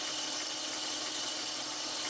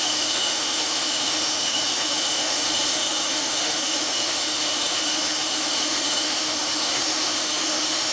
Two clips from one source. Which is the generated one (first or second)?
second